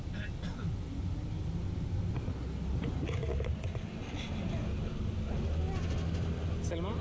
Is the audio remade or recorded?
recorded